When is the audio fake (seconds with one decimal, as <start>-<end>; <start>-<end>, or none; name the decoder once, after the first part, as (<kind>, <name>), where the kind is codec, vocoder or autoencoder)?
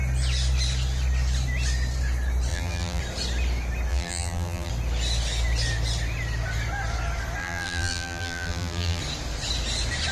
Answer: 2.5-3.0 (vocoder, BigVGAN v2); 3.9-4.7; 7.4-9.0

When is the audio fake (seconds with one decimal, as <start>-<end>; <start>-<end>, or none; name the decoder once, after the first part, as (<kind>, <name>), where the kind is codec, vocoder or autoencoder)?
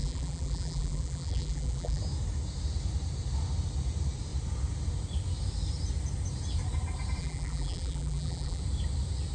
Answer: 0.0-2.0 (vocoder, BigVGAN v2); 7.2-8.6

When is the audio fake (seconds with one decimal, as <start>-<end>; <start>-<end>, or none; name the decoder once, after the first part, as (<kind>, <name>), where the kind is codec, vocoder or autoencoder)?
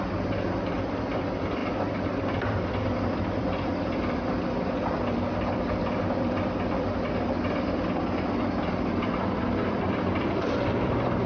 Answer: 0.0-11.3 (vocoder, BigVGAN v2)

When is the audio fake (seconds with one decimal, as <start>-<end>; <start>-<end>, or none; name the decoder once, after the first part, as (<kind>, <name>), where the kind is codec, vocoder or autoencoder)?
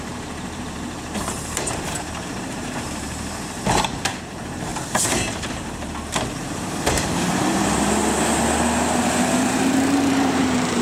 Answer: 0.0-4.7 (vocoder, BigVGAN v2); 7.5-8.0; 9.0-10.8